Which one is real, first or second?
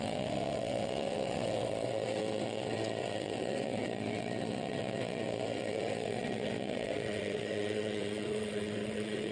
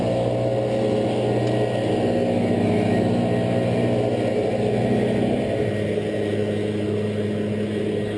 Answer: second